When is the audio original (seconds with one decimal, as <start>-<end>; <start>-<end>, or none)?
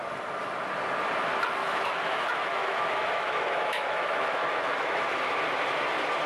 0.0-1.6; 5.4-6.3